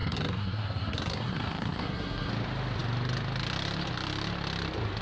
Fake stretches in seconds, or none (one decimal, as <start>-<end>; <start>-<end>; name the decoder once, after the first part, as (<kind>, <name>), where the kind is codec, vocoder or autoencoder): 0.0-2.3 (codec, SNAC)